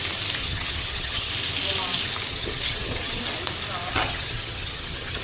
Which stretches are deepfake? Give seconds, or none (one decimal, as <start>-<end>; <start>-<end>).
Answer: 0.4-1.3; 2.3-3.2; 3.9-5.2